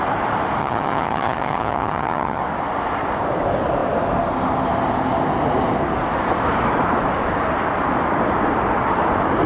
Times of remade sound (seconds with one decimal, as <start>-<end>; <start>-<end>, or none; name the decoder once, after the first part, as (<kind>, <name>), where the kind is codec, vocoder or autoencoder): 0.6-2.4 (vocoder, HiFi-GAN)